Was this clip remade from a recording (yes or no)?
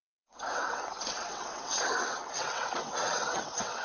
yes